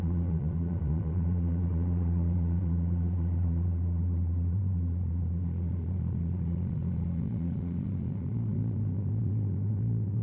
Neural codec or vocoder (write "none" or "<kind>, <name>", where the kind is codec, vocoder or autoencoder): vocoder, Vocos